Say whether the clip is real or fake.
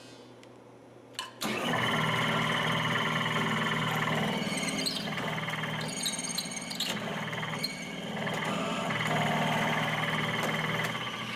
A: real